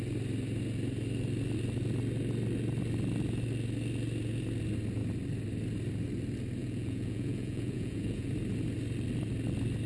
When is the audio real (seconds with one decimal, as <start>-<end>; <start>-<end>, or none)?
0.0-6.6; 8.3-9.9